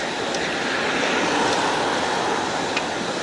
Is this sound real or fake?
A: real